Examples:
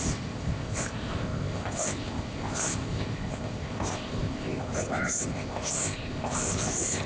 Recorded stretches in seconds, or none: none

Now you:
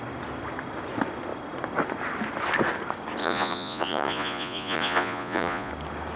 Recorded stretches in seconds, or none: 0.0-3.2; 5.7-6.2

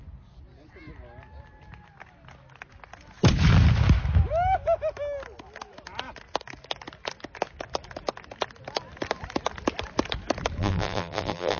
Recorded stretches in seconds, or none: 0.0-10.6